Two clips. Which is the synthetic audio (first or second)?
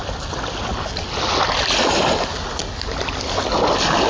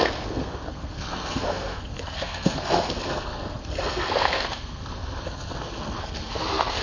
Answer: second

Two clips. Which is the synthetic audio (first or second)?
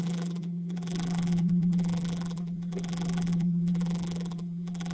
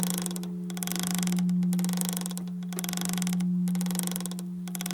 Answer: first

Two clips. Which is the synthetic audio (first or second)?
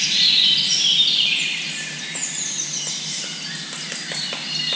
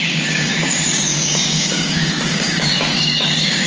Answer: second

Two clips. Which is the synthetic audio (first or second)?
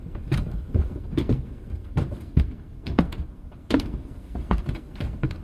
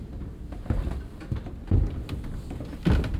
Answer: first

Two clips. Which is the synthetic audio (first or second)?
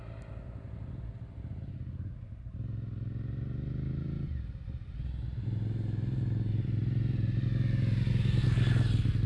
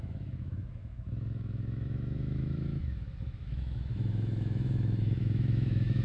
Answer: second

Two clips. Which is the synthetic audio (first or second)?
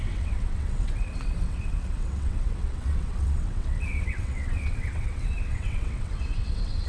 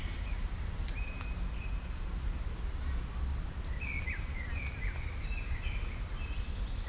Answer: first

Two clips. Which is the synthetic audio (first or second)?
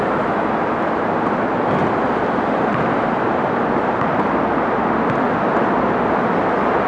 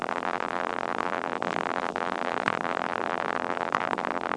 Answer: second